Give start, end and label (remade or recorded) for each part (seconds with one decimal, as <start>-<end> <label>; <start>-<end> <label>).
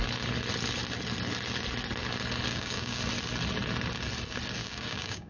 0.0-2.5 recorded; 2.5-3.0 remade; 3.0-4.6 recorded; 4.6-5.3 remade